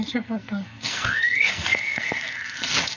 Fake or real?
fake